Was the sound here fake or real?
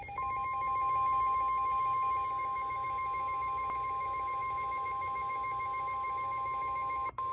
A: real